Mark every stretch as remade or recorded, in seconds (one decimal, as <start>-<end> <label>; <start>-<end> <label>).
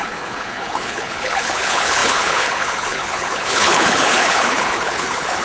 0.0-5.4 remade